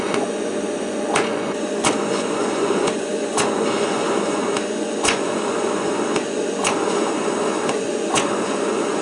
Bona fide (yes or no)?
no